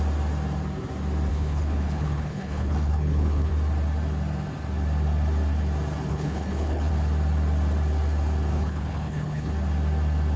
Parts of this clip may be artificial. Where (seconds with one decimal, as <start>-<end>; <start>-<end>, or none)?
1.3-3.5; 6.1-6.9; 8.5-9.5